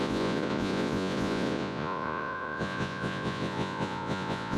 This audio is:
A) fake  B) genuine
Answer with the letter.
A